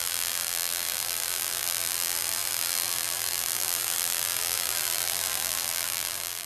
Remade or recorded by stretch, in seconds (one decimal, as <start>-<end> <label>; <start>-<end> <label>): 0.0-6.5 remade